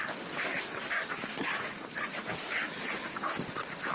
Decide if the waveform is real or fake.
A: real